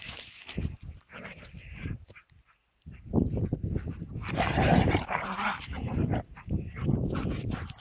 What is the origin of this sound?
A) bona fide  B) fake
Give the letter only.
B